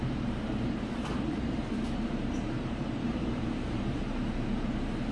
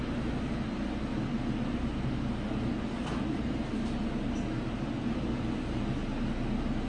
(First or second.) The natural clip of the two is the second